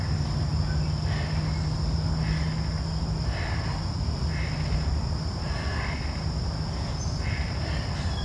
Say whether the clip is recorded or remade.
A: recorded